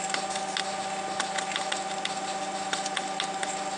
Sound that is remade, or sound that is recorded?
recorded